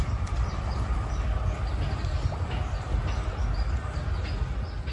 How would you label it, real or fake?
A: real